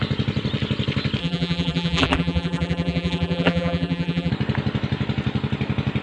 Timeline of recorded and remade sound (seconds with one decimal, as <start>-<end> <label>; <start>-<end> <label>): 0.0-1.2 recorded; 1.2-4.3 remade; 4.3-6.0 recorded